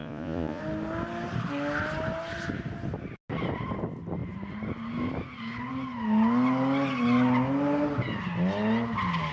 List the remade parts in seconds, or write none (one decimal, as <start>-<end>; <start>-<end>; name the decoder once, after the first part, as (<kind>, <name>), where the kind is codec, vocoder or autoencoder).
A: 0.0-0.6 (vocoder, Vocos)